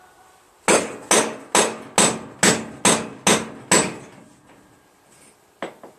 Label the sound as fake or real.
real